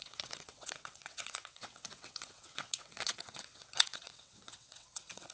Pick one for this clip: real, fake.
fake